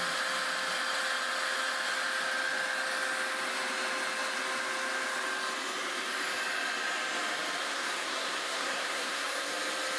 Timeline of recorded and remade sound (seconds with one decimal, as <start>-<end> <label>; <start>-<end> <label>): 0.0-7.6 recorded; 7.6-9.5 remade; 9.5-10.0 recorded